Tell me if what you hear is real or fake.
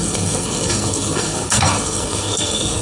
fake